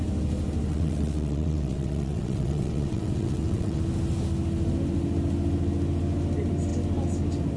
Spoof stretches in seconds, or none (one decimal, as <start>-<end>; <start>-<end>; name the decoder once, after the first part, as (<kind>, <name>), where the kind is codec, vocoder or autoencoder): 0.7-3.8 (vocoder, WaveNeXt)